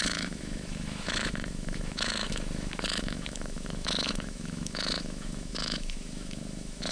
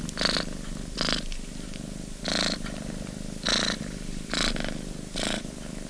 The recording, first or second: second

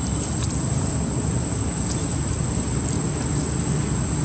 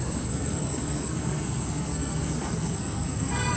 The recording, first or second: first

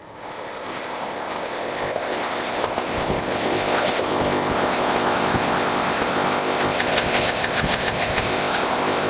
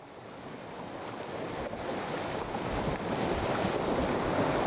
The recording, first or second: second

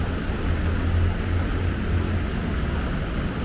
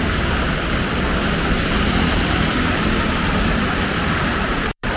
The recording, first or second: first